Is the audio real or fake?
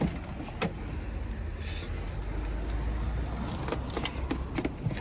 real